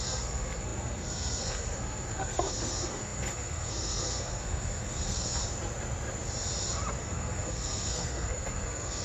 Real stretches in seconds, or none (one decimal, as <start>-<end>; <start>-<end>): 5.4-7.0